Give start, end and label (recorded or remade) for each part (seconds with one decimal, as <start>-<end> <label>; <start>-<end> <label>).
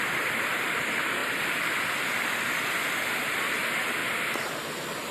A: 0.0-1.2 recorded; 1.2-3.2 remade; 3.2-4.0 recorded; 4.0-4.6 remade; 4.6-5.1 recorded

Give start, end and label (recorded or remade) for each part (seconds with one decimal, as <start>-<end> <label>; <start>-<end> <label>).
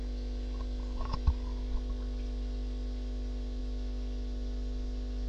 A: 0.0-5.3 recorded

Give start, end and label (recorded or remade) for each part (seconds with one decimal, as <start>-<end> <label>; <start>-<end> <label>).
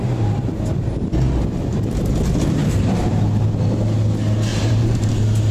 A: 0.0-2.6 recorded; 2.6-3.2 remade; 3.2-4.5 recorded; 4.5-5.1 remade; 5.1-5.5 recorded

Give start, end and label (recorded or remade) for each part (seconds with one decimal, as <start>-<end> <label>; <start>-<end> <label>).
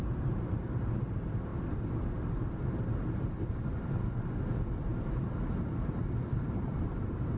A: 0.0-1.5 remade; 1.5-5.6 recorded; 5.6-7.4 remade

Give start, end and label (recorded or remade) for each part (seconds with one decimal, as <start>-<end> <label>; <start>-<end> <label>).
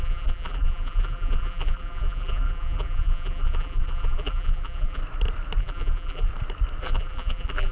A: 0.0-5.0 remade; 5.0-5.6 recorded; 5.6-6.3 remade; 6.3-6.8 recorded; 6.8-7.7 remade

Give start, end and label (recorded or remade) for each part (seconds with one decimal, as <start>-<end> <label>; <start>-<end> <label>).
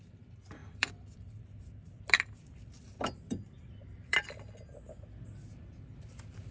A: 0.0-0.6 recorded; 0.6-4.3 remade; 4.3-6.5 recorded